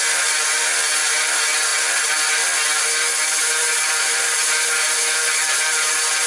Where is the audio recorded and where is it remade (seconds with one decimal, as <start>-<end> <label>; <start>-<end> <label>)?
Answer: 0.0-6.3 recorded